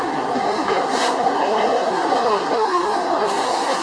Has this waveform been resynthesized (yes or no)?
yes